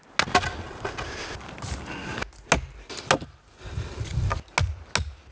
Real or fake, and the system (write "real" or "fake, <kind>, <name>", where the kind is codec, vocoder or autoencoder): real